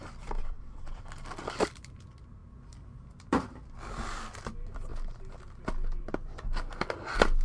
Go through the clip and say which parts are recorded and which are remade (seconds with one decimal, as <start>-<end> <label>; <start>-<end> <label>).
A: 0.0-0.4 recorded; 0.4-1.0 remade; 1.0-7.4 recorded